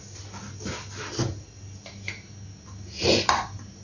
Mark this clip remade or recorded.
recorded